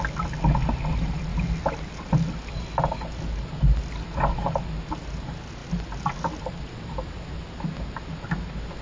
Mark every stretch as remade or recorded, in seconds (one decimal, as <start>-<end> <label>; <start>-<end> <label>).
0.0-8.8 recorded